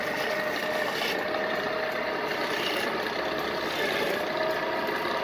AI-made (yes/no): no